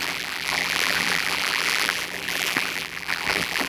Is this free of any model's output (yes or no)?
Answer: no